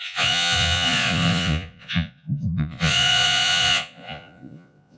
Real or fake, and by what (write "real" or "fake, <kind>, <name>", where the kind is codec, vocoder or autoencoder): fake, vocoder, Vocos